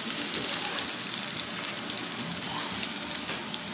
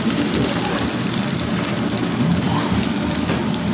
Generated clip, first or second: second